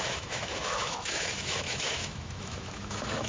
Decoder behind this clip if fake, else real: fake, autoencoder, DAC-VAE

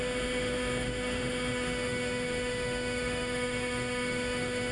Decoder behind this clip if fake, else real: fake, autoencoder, DAC-VAE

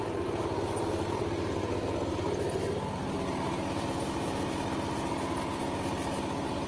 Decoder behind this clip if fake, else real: real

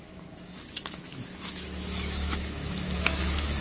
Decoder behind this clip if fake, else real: fake, autoencoder, DAC-VAE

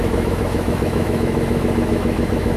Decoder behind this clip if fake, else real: fake, autoencoder, DAC-VAE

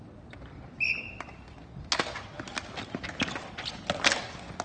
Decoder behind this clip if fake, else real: real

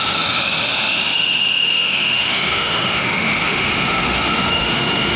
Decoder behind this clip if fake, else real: fake, autoencoder, DAC-VAE